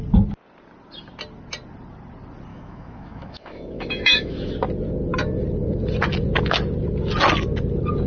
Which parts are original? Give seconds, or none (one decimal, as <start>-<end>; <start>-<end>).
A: 0.0-2.5; 4.5-8.1